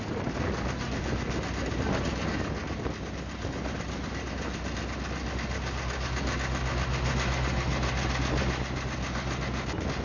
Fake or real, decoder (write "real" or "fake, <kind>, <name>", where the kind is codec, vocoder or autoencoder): real